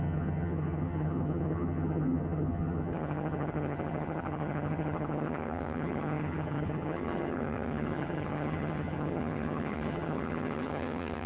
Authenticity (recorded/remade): remade